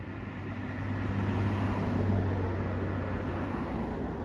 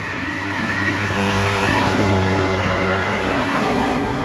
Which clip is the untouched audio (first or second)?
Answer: first